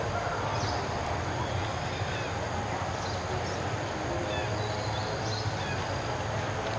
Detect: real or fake real